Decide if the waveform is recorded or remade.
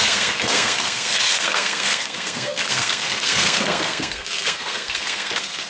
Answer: remade